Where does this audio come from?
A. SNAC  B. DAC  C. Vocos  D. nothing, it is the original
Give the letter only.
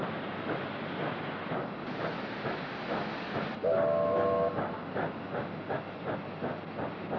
D